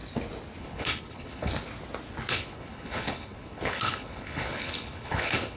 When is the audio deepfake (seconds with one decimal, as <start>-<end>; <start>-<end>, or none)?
0.6-1.5; 2.3-5.6